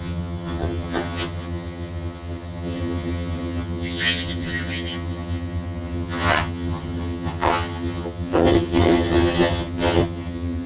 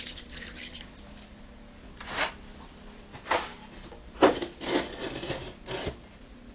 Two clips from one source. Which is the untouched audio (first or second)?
second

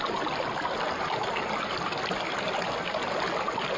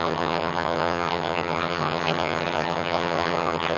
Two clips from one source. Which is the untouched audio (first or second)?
first